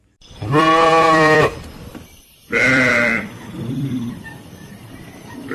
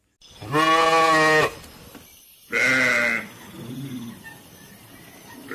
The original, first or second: second